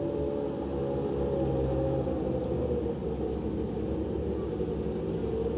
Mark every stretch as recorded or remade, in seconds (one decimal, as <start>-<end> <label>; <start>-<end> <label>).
0.0-5.6 recorded